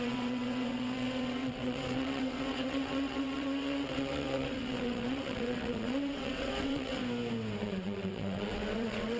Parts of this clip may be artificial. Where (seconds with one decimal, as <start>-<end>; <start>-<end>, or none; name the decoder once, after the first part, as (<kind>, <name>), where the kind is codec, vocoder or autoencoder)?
0.0-7.0 (vocoder, WaveNeXt); 7.6-9.2